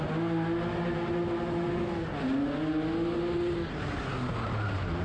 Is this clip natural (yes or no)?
yes